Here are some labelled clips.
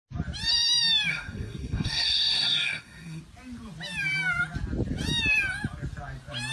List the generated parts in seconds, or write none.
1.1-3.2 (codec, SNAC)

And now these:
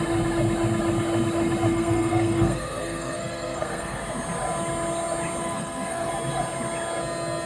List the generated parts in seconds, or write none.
1.7-4.0 (codec, SNAC); 5.4-6.1